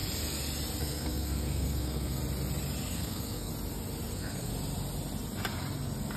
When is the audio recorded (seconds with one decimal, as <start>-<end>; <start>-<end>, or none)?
0.0-0.8; 2.2-2.9; 3.5-4.1; 4.5-6.2